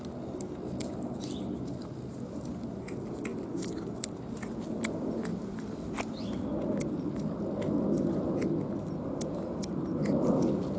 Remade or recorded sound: recorded